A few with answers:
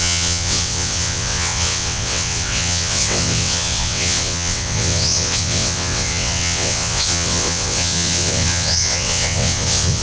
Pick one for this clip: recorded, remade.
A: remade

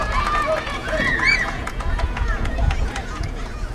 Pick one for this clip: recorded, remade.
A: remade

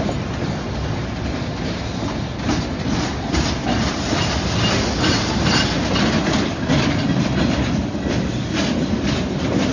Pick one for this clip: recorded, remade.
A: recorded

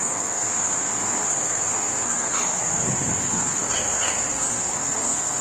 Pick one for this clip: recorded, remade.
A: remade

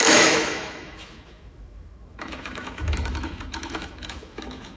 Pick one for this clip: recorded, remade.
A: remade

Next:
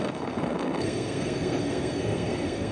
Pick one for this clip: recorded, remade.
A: remade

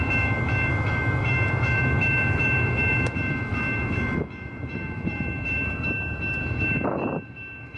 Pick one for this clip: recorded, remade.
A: remade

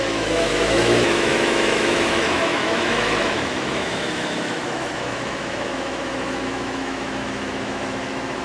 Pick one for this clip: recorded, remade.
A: remade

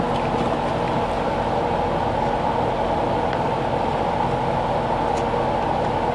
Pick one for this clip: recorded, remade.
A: recorded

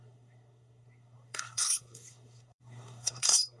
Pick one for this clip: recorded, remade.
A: remade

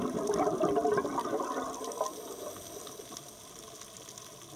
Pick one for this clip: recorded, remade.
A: recorded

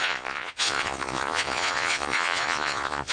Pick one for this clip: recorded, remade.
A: remade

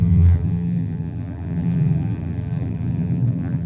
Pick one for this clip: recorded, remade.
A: remade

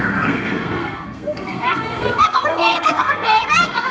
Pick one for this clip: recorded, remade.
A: remade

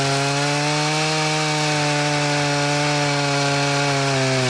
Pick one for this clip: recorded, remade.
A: recorded